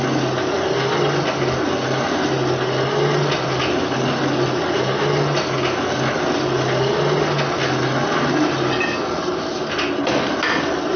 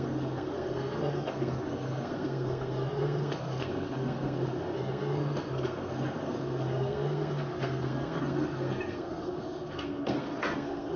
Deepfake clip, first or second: second